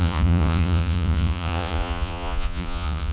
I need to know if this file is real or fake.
fake